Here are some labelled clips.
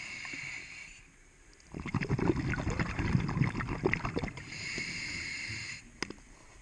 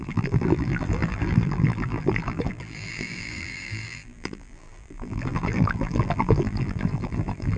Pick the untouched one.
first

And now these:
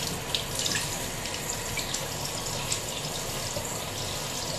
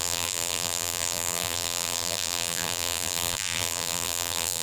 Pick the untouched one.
first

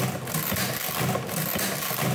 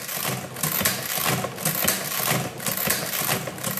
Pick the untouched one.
second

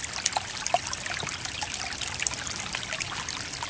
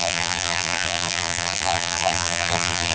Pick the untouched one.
first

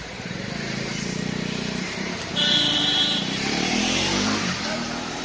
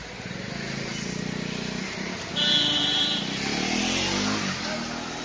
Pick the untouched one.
second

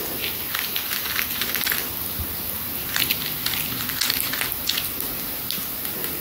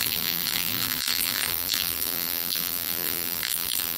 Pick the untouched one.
first